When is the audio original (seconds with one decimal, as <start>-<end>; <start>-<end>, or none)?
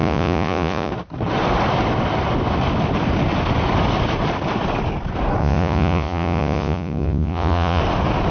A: 0.9-5.4; 7.8-8.3